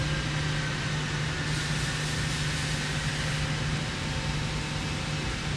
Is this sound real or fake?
real